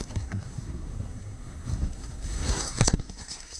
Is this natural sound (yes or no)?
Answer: no